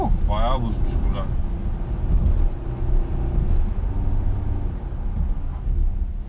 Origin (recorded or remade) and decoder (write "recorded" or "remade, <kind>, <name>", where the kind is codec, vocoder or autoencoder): recorded